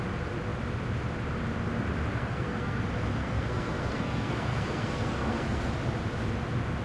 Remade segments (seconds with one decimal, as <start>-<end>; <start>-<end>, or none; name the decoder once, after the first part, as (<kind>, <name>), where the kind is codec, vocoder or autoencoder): 2.1-2.8 (codec, SNAC); 3.2-5.7